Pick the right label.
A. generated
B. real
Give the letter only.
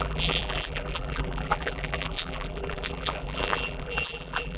A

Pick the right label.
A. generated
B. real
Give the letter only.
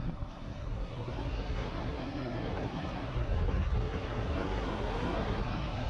A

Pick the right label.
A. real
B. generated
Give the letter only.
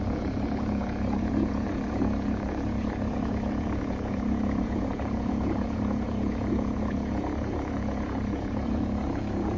B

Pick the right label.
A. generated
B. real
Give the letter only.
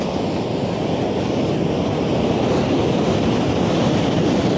B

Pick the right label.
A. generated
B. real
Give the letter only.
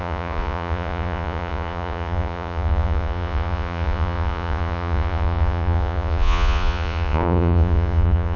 A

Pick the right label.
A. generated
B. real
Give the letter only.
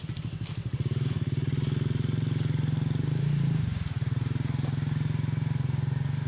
B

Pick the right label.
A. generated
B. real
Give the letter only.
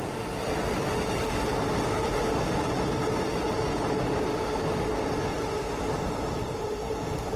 B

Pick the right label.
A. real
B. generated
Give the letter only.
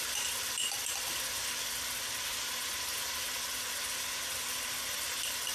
B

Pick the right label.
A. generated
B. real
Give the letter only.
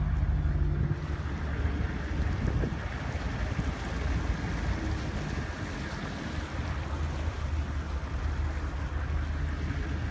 B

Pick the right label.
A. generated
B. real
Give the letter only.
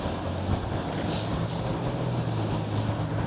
B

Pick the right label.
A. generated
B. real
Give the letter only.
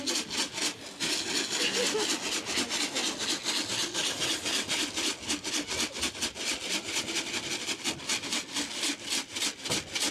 B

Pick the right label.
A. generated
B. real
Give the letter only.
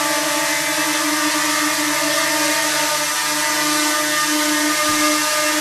B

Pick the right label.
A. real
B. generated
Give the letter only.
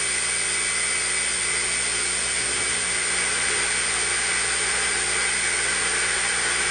A